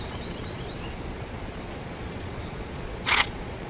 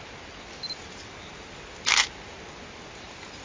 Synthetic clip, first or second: first